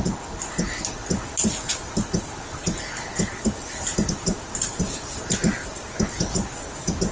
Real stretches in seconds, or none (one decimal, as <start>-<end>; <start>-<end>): 0.0-7.1